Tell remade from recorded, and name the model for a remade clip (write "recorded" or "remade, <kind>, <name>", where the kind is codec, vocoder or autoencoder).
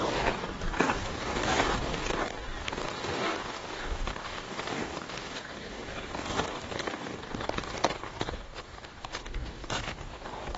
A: remade, codec, DAC